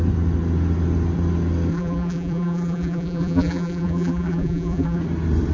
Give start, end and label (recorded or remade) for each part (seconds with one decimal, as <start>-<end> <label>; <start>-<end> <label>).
0.0-1.7 recorded; 1.7-5.0 remade; 5.0-5.5 recorded